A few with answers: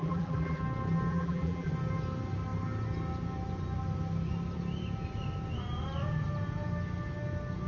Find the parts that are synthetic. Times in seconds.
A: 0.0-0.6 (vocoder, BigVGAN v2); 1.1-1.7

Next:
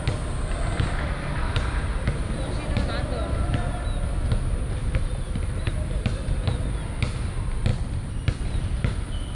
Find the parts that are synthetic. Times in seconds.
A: 4.8-5.7 (vocoder, BigVGAN v2)